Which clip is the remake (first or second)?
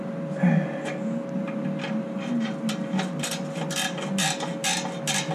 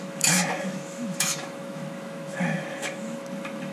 second